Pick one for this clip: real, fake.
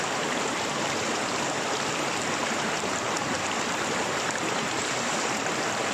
fake